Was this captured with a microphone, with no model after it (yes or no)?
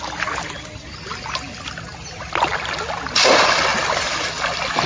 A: yes